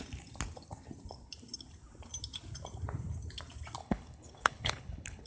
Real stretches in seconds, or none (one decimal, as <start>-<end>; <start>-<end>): 0.0-3.8